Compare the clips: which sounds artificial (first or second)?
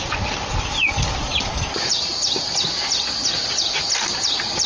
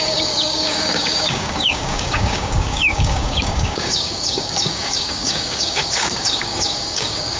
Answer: second